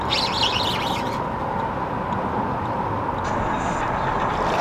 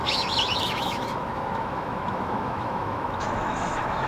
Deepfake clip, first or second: second